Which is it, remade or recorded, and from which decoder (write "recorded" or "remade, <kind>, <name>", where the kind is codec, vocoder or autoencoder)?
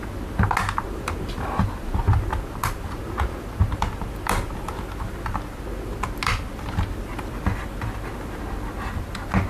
recorded